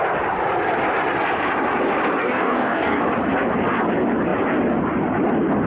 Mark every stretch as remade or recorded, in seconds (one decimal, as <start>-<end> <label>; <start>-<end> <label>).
0.0-2.2 recorded; 2.2-3.0 remade; 3.0-5.7 recorded